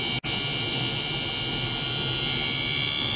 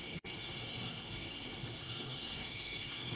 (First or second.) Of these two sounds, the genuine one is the first